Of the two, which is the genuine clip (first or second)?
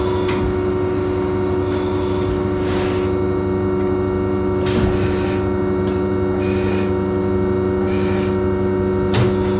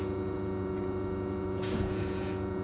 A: first